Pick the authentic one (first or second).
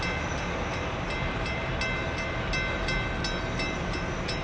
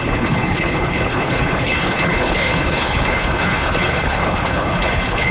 first